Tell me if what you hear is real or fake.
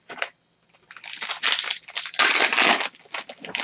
real